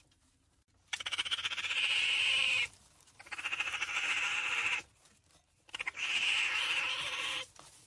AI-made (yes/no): yes